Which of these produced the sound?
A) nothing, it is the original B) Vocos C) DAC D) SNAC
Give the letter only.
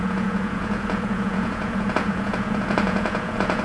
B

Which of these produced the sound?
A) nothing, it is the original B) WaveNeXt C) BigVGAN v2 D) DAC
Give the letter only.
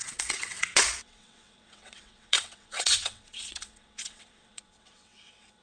B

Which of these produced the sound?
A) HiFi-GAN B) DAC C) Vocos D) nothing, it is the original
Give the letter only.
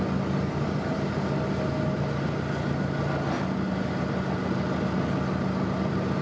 D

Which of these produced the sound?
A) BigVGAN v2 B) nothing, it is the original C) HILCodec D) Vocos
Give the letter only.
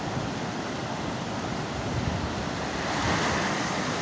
B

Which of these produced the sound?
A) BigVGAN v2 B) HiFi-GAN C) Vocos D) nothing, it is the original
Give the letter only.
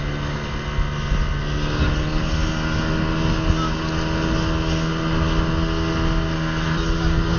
D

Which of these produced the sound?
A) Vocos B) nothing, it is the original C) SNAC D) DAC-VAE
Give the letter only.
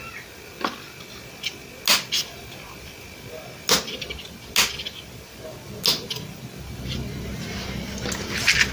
B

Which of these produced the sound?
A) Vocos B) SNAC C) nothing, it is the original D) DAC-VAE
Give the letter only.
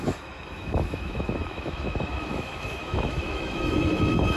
D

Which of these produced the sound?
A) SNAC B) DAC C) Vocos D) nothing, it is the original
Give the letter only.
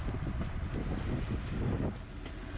D